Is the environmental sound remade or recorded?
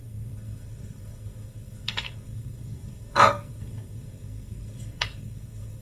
remade